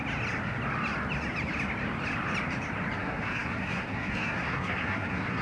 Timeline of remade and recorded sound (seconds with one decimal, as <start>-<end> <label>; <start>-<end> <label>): 0.0-3.0 recorded; 3.0-5.4 remade